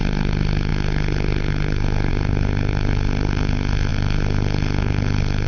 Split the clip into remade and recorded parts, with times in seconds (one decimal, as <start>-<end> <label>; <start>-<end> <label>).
0.0-5.5 remade